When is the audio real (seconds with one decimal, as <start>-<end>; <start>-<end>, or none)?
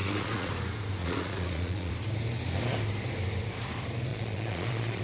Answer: 0.5-1.0; 1.9-4.1